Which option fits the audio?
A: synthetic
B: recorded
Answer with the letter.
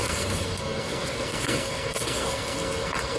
A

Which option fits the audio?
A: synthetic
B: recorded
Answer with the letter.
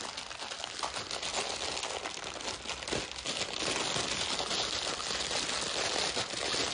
B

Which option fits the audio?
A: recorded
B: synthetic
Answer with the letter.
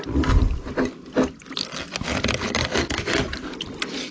A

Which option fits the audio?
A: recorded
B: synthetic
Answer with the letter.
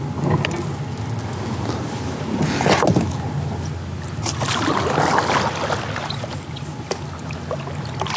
A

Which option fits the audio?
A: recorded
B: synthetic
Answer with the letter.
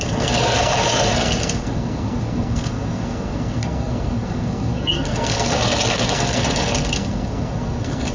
B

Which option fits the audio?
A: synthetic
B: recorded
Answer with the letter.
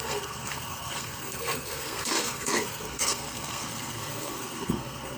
A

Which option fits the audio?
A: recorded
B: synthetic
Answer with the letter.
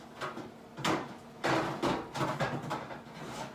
A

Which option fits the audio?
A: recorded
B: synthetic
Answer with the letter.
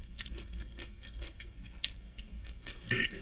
B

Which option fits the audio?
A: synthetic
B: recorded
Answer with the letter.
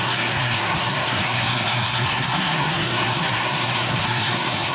A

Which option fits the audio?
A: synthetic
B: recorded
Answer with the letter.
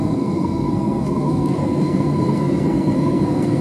A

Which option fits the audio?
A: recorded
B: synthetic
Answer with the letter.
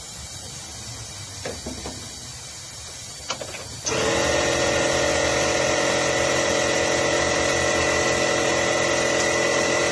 A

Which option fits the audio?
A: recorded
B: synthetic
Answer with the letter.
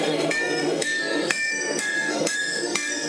B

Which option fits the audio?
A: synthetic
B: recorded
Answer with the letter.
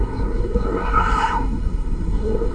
A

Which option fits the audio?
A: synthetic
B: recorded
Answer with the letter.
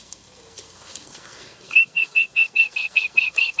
A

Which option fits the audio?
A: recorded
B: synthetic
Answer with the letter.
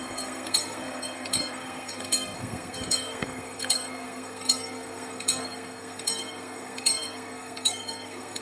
B